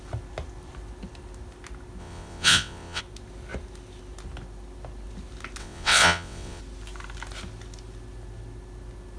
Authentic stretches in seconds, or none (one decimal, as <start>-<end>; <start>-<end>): 0.0-2.0; 3.0-5.6; 6.6-9.2